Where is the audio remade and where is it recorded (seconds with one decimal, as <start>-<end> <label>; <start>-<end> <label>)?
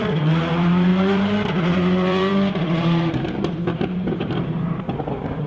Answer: 0.0-5.5 remade